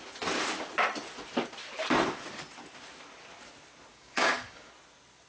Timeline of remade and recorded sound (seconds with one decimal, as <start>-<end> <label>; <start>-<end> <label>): 0.0-3.9 recorded; 3.9-4.7 remade; 4.7-5.3 recorded